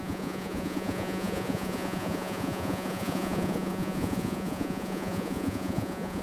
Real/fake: fake